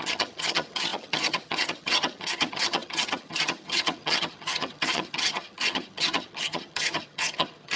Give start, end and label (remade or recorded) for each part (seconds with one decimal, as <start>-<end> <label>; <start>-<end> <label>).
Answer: 0.0-7.8 remade